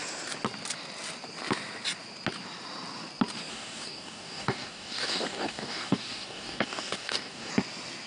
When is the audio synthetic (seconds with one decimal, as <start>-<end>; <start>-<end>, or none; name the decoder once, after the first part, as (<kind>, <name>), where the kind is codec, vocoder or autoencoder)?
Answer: 3.5-7.5 (codec, DAC)